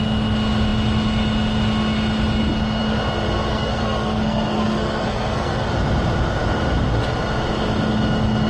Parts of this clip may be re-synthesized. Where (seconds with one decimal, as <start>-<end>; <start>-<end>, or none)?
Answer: 3.5-5.7